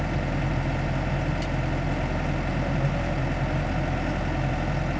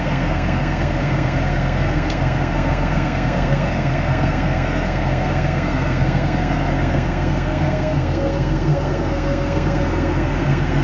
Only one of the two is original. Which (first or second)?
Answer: first